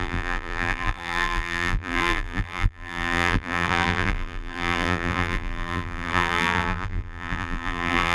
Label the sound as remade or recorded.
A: remade